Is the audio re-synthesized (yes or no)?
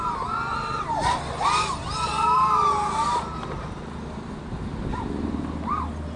no